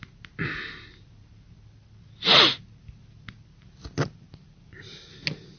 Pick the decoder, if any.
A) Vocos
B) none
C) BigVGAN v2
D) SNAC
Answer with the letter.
B